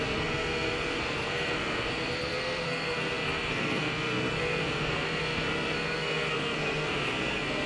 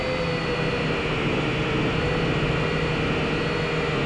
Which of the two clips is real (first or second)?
second